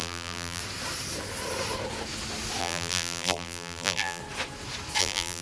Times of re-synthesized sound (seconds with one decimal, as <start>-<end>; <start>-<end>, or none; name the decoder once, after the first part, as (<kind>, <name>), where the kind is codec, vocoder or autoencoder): 0.0-0.6 (vocoder, BigVGAN v2); 2.6-4.2; 5.0-5.4